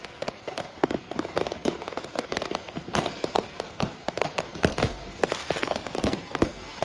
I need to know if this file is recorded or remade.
remade